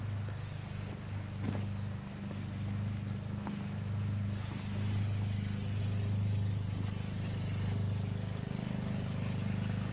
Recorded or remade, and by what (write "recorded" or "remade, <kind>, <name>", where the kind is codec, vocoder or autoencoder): recorded